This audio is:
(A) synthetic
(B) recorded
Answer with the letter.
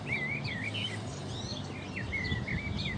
B